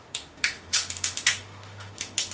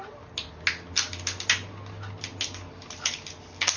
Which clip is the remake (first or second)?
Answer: first